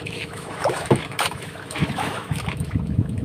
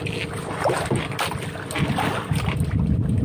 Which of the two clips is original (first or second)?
second